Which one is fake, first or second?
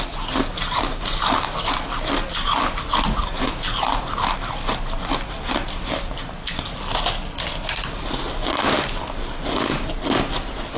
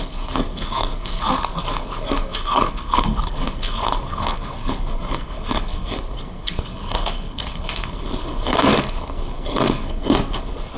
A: second